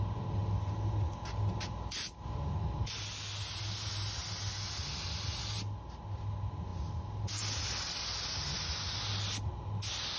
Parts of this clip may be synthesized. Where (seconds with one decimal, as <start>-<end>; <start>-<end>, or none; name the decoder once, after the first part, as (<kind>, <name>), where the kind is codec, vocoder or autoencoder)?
none